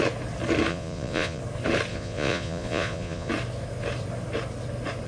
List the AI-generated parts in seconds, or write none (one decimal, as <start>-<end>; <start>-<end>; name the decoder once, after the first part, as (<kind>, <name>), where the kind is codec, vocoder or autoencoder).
0.7-1.4 (vocoder, Vocos); 1.9-3.3